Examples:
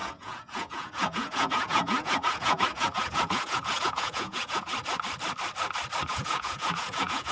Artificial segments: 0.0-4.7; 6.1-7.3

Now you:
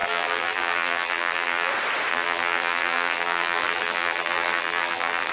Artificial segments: 0.0-1.7; 2.1-5.3